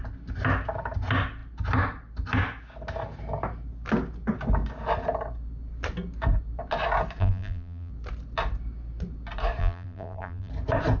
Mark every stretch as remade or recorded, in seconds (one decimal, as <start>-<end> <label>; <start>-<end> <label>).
0.0-7.2 recorded; 7.2-7.9 remade; 7.9-9.6 recorded; 9.6-10.5 remade; 10.5-11.0 recorded